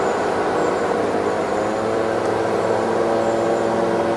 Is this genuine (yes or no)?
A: yes